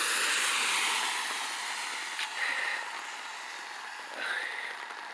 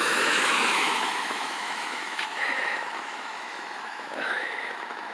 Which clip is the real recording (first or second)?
first